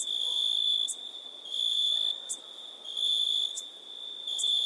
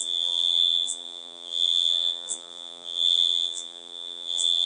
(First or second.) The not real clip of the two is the second